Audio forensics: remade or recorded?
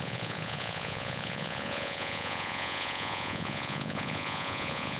remade